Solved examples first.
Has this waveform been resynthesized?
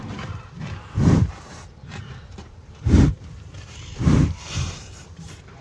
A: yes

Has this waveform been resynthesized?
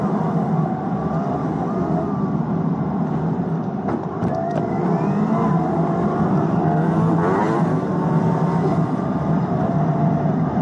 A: yes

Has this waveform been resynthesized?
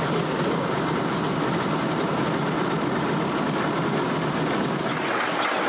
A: no